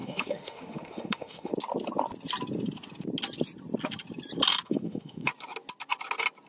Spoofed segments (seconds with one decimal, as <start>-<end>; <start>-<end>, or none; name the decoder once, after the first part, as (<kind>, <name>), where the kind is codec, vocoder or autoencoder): 0.0-1.5 (autoencoder, DAC-VAE); 4.5-5.3